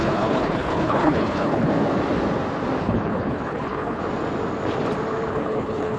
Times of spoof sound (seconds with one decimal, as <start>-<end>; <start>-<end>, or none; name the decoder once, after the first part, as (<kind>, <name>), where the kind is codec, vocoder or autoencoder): 0.0-1.7 (codec, HILCodec); 2.8-4.0; 5.3-6.0